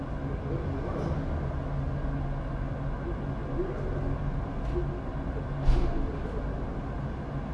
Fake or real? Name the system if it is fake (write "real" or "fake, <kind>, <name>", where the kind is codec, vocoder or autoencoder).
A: real